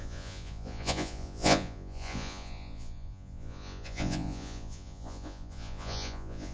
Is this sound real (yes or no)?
no